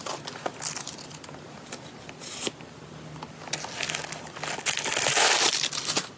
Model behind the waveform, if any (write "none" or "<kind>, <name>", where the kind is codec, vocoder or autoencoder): none